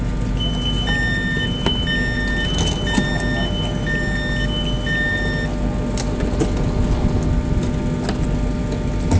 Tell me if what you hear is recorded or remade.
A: recorded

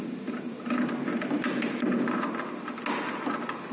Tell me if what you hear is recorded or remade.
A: recorded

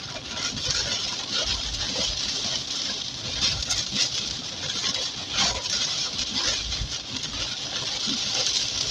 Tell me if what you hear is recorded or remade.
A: recorded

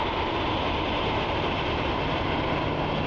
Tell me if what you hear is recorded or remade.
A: recorded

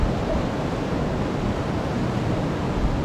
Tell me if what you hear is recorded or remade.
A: recorded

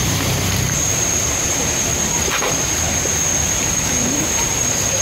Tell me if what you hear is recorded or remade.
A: remade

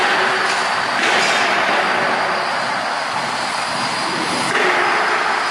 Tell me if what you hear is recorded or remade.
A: recorded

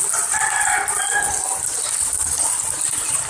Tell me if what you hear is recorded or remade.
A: recorded